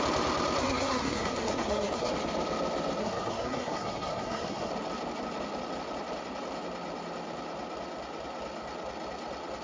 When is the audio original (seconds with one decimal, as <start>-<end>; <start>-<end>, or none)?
0.0-0.6; 2.1-3.0; 4.7-9.6